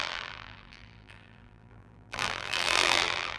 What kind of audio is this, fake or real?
fake